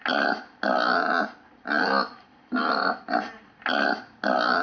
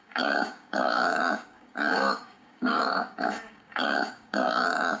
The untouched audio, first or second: first